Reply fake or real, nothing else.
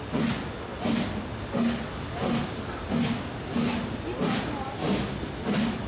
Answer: real